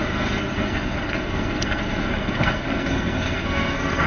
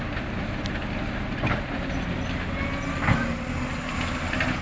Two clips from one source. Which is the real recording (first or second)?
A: second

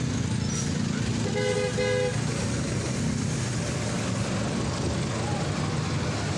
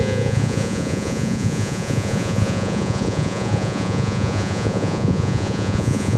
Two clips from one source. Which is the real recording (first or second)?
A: first